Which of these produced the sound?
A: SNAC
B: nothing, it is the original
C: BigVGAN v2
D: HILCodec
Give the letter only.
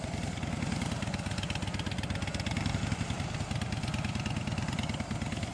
B